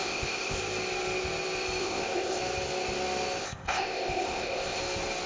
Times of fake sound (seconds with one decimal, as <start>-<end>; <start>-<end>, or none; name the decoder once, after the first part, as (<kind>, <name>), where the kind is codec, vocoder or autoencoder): 0.0-0.6 (codec, ZipCodec); 1.8-2.4; 3.4-4.8